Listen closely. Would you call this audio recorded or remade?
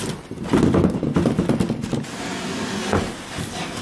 recorded